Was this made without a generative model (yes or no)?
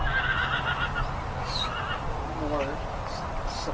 yes